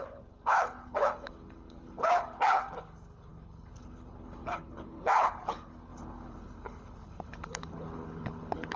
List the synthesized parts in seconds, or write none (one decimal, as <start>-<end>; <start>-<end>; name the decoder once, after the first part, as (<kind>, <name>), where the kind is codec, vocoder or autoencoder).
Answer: 0.0-8.8 (codec, HILCodec)